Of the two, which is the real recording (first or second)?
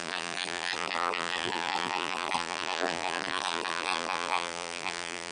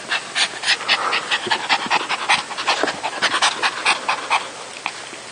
second